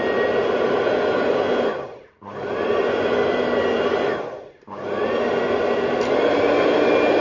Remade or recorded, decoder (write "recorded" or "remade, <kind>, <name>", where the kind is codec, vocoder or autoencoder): recorded